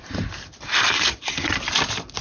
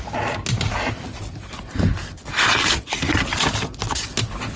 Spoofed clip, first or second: first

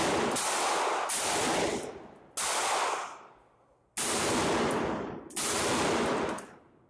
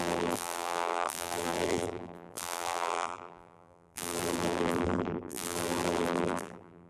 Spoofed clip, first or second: second